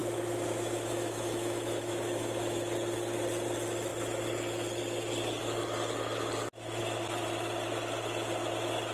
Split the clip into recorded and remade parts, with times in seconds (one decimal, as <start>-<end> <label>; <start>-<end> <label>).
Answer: 0.0-2.6 remade; 2.6-8.9 recorded